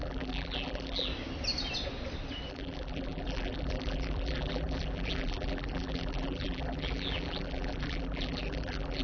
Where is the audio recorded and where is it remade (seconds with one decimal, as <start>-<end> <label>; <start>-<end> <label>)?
0.0-1.1 remade; 1.1-2.5 recorded; 2.5-9.0 remade